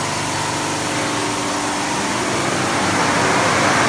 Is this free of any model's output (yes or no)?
yes